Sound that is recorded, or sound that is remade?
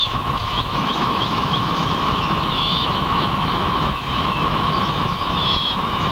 remade